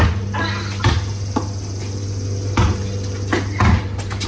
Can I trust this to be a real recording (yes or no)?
yes